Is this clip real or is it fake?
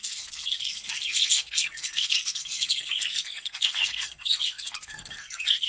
fake